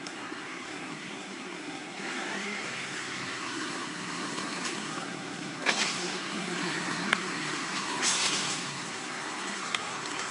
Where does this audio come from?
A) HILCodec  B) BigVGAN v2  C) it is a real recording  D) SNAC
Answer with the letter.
D